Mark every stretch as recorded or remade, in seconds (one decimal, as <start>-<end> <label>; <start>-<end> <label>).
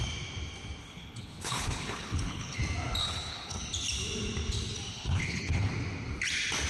0.0-0.8 recorded; 0.8-2.6 remade; 2.6-3.0 recorded; 3.0-3.6 remade; 3.6-4.9 recorded; 4.9-5.7 remade; 5.7-6.7 recorded